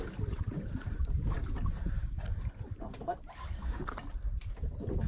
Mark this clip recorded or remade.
remade